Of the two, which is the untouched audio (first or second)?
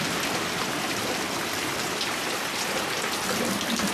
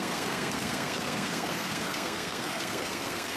first